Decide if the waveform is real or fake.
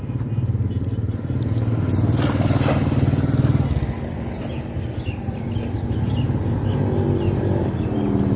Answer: real